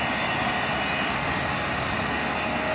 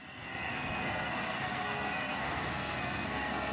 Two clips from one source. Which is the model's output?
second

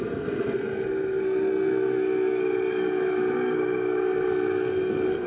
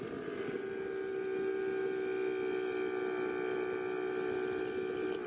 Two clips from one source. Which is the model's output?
first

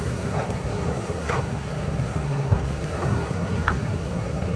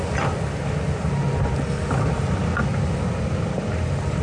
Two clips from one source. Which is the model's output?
first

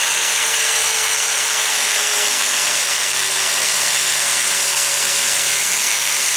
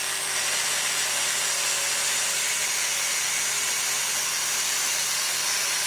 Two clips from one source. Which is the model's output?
first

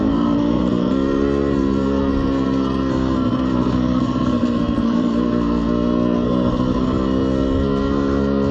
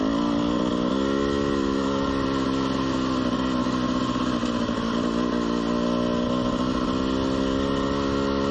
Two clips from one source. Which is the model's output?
first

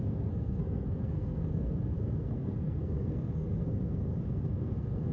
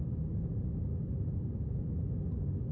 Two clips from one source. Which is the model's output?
first